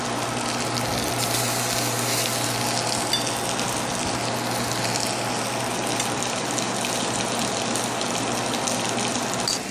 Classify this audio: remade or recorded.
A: recorded